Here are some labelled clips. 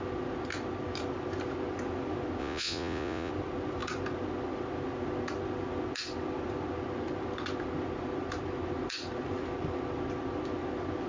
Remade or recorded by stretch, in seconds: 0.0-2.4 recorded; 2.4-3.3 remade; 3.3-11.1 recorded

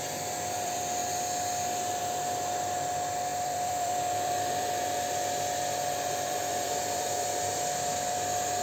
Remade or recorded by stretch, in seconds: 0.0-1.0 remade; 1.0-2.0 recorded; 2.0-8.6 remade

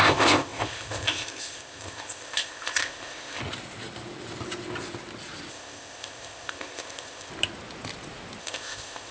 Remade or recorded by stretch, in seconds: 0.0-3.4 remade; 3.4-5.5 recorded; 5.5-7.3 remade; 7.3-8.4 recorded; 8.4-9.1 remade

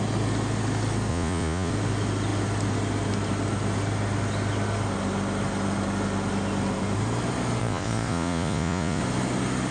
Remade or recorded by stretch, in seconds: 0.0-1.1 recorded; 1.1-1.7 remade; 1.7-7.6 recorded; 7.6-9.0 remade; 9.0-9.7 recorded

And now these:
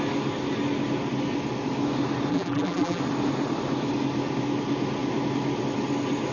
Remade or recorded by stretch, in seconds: 0.0-2.3 recorded; 2.3-3.0 remade; 3.0-6.3 recorded